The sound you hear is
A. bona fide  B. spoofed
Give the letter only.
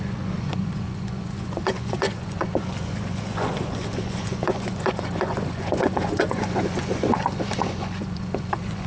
B